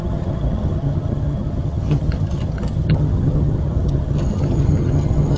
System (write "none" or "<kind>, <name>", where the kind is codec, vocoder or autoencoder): vocoder, HiFi-GAN